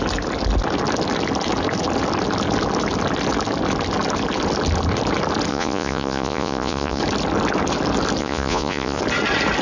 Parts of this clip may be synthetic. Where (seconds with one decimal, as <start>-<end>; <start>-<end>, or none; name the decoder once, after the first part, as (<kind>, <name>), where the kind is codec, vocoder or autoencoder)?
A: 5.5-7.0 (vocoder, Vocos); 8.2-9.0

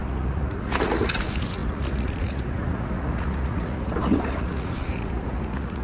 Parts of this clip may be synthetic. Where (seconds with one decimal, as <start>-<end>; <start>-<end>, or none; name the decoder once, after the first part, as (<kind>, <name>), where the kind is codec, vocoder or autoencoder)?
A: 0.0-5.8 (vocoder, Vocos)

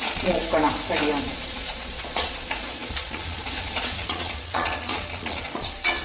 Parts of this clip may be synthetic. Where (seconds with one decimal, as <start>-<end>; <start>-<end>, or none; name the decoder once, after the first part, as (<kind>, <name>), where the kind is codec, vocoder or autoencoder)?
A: 0.0-0.4 (vocoder, Vocos); 1.2-6.0